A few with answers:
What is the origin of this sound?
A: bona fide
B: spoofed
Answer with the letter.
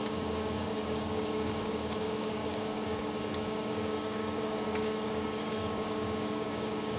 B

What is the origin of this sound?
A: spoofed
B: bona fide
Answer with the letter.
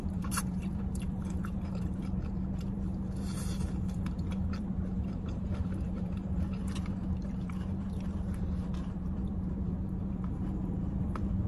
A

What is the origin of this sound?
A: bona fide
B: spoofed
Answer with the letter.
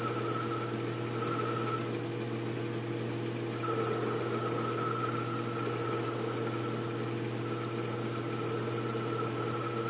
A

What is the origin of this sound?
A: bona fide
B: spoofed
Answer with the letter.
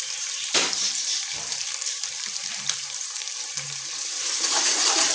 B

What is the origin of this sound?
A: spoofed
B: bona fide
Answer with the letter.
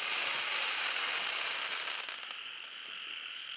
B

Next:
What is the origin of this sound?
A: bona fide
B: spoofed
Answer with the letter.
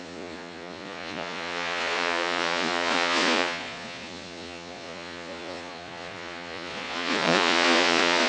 B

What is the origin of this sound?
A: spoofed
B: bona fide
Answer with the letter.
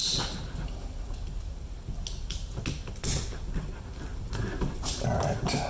B